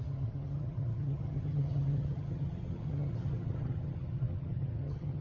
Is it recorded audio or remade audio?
remade